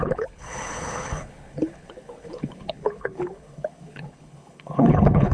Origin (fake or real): fake